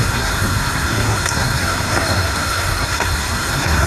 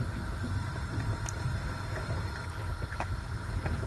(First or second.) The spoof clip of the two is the first